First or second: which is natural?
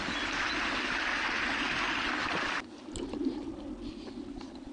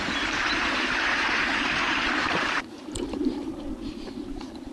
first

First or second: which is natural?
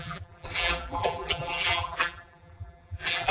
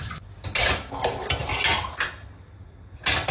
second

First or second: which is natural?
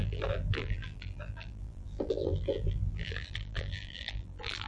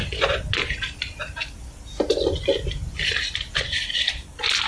second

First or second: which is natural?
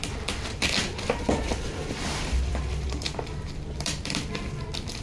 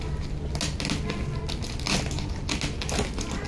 second